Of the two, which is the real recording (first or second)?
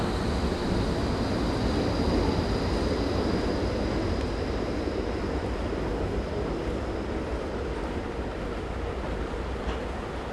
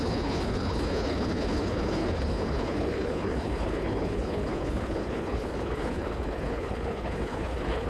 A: first